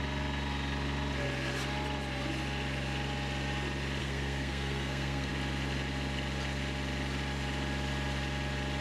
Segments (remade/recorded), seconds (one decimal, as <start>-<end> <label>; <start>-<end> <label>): 0.0-4.0 recorded; 4.0-5.3 remade; 5.3-8.8 recorded